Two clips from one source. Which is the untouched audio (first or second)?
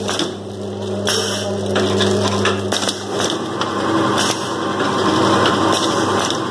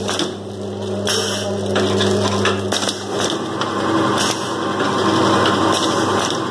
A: second